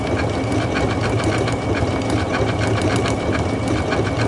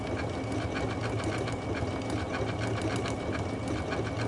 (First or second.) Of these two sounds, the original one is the second